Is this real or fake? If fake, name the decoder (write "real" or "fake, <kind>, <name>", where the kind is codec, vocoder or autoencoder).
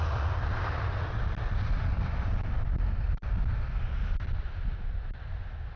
real